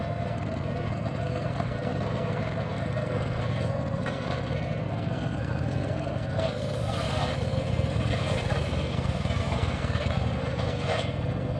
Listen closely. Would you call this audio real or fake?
fake